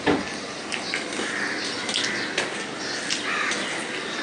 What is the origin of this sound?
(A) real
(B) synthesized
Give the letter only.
A